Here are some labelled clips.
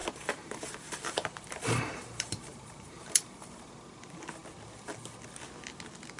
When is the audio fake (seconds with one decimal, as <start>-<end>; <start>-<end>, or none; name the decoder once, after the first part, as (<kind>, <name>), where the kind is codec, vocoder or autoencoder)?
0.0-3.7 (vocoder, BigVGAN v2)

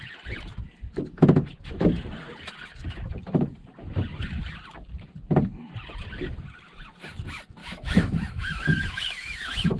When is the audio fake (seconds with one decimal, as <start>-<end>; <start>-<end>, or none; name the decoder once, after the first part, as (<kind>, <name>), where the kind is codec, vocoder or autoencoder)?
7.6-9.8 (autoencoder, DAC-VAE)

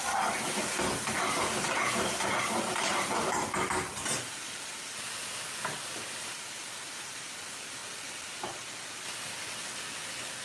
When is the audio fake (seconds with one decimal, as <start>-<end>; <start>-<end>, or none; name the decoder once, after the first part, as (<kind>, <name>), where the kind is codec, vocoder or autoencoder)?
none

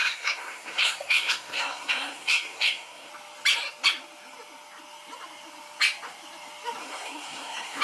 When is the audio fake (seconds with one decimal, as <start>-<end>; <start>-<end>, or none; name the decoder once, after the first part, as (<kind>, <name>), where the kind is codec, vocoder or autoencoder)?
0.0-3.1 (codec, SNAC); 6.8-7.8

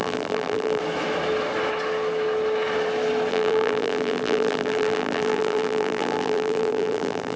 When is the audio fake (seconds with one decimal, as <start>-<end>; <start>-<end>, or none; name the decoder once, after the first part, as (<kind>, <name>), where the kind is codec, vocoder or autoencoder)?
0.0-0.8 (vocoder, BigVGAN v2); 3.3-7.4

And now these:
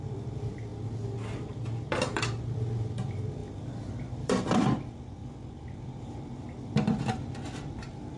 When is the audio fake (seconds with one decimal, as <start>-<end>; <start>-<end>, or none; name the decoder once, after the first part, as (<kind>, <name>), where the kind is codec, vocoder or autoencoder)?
0.0-0.7 (vocoder, BigVGAN v2); 1.5-5.2; 6.0-8.2